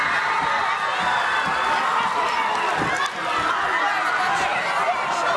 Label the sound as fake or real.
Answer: real